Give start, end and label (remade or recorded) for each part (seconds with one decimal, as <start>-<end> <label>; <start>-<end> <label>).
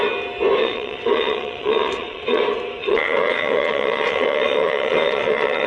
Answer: 0.0-0.6 recorded; 0.6-2.4 remade; 2.4-2.8 recorded; 2.8-5.7 remade